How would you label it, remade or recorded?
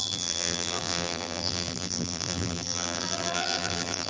remade